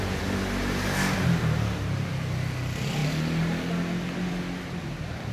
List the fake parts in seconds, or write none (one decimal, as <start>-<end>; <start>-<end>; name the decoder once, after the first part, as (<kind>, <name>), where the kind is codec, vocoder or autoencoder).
none

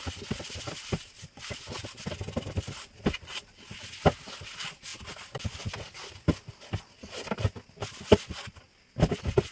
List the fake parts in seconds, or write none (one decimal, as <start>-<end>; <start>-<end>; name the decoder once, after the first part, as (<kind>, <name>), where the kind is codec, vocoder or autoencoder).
none

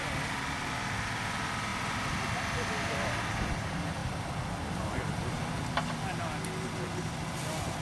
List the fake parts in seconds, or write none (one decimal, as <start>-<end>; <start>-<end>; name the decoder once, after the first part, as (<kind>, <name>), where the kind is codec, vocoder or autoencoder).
none

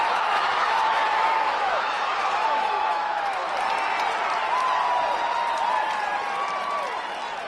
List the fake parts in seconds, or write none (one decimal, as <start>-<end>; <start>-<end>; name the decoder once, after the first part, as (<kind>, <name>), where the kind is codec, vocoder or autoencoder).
0.0-3.4 (autoencoder, DAC-VAE)